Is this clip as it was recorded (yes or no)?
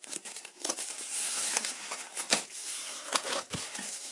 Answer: no